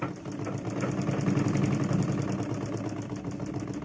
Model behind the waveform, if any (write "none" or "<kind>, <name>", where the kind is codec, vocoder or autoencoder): none